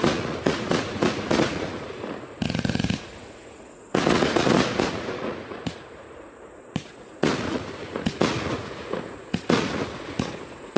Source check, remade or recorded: remade